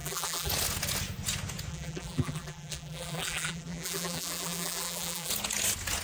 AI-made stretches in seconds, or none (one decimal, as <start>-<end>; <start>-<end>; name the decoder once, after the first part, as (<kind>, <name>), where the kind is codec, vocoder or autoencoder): 0.0-0.5 (vocoder, BigVGAN v2); 1.7-5.3